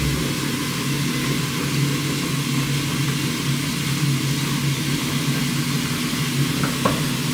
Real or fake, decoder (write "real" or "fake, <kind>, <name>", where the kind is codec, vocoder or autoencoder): real